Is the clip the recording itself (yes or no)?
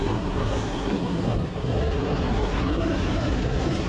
no